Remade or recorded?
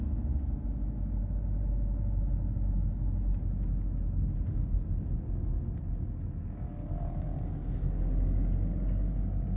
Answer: recorded